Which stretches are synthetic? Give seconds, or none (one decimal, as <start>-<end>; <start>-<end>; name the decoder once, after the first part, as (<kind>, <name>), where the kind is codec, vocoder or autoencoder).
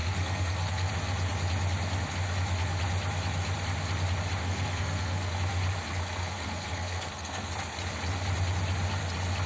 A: 0.0-0.9 (codec, SNAC); 4.4-5.3; 6.2-7.5